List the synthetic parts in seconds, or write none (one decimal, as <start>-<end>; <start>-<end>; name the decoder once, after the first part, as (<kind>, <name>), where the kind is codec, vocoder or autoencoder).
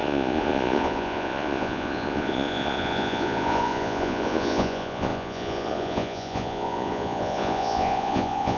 0.0-8.6 (vocoder, Vocos)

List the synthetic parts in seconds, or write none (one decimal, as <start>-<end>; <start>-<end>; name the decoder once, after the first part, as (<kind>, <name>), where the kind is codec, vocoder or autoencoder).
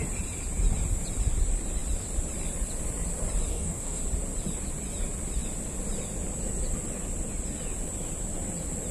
3.5-4.0 (codec, DAC)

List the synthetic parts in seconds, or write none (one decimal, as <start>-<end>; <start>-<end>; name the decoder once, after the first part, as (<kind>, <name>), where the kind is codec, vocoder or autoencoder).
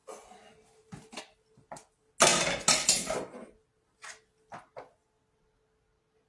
0.0-1.2 (vocoder, BigVGAN v2)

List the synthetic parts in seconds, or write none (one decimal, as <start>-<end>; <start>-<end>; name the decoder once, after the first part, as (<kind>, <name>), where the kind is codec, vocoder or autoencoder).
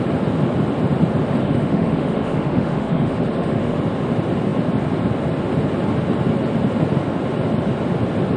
1.4-3.8 (autoencoder, DAC-VAE)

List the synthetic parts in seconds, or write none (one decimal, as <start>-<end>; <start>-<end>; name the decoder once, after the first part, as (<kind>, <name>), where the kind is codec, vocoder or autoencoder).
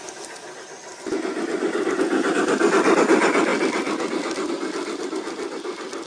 none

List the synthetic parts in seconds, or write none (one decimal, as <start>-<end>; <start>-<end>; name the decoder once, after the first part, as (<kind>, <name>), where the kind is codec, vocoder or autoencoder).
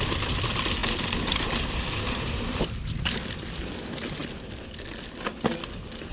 0.0-4.2 (vocoder, BigVGAN v2)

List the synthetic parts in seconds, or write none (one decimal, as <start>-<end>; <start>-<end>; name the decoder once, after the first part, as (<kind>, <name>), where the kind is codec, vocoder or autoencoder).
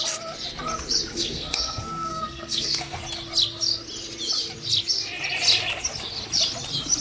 1.1-3.0 (codec, SNAC)